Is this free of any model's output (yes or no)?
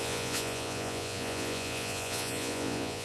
no